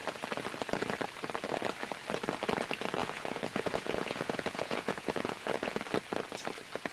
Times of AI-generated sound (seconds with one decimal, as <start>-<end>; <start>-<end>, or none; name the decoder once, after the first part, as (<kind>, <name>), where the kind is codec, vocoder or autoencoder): 3.0-5.8 (vocoder, Vocos)